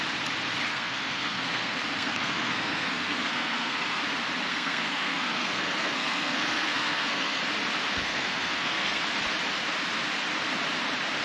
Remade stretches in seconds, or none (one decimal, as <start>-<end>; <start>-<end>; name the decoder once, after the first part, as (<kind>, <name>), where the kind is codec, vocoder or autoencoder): 0.7-4.0 (codec, SNAC); 4.5-7.4; 7.9-9.0